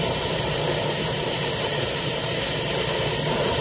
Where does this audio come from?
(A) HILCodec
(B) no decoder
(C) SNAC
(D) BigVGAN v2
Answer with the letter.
D